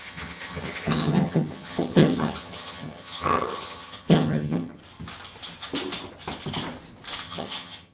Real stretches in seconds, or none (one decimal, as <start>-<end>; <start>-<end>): 4.8-7.2